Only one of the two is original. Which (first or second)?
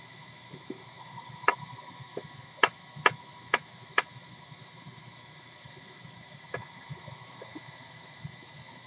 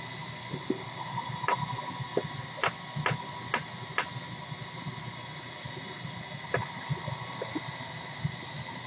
second